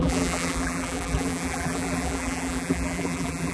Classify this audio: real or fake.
fake